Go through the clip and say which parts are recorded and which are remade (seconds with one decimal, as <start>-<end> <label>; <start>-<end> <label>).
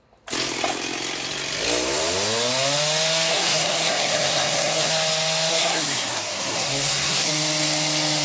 0.0-3.3 recorded; 3.3-4.9 remade; 4.9-5.5 recorded; 5.5-7.3 remade; 7.3-8.2 recorded